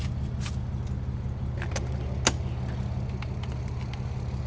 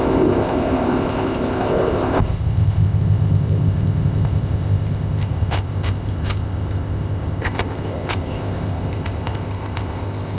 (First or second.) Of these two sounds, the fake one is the second